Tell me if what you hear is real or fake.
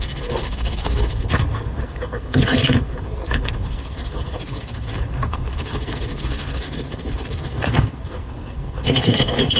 fake